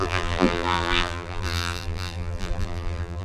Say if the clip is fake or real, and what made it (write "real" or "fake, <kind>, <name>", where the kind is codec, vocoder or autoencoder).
fake, vocoder, BigVGAN v2